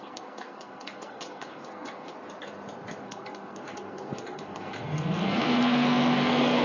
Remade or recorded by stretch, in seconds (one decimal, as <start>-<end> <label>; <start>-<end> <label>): 0.0-2.1 remade; 2.1-3.0 recorded; 3.0-6.6 remade

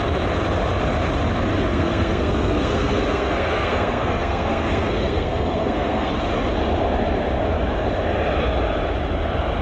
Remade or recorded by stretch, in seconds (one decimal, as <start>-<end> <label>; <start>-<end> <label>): 0.0-1.7 recorded; 1.7-6.1 remade; 6.1-9.6 recorded

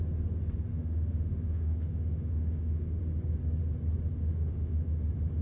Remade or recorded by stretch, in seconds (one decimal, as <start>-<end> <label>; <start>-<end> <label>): 0.0-0.7 recorded; 0.7-3.0 remade; 3.0-4.1 recorded; 4.1-5.0 remade; 5.0-5.4 recorded